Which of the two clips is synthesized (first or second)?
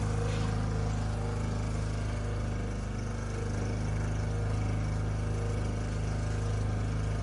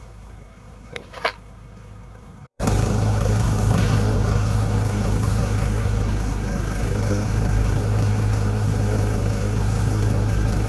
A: second